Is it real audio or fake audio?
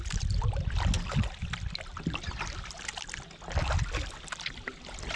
real